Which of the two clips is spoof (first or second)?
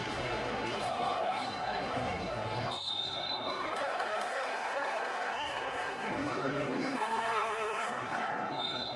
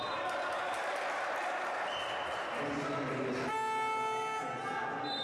first